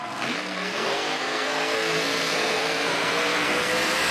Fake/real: fake